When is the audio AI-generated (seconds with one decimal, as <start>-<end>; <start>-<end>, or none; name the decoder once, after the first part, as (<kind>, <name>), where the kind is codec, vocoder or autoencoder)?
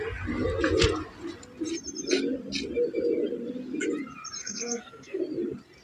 4.4-5.2 (codec, SNAC)